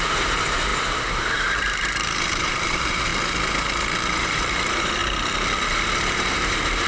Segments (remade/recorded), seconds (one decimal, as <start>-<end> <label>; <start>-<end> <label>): 0.0-3.1 remade; 3.1-4.2 recorded; 4.2-5.0 remade; 5.0-5.7 recorded; 5.7-6.9 remade

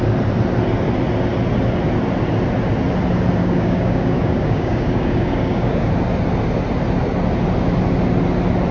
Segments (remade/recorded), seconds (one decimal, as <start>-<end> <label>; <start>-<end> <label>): 0.0-3.4 recorded; 3.4-5.9 remade; 5.9-8.7 recorded